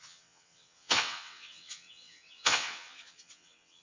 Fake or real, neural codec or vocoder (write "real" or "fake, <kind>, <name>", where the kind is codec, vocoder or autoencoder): fake, vocoder, WaveNeXt